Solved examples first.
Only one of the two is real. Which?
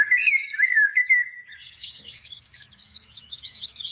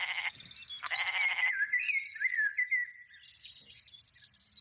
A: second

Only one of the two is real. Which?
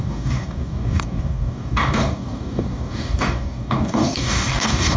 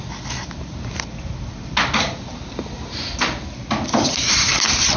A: second